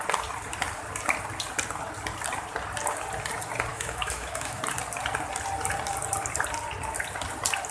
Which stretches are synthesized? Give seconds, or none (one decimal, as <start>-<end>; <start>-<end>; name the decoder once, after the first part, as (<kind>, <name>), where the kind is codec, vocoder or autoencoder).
3.7-4.6 (autoencoder, DAC-VAE)